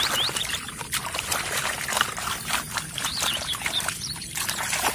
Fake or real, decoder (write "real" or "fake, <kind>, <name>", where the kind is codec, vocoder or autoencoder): fake, vocoder, BigVGAN v2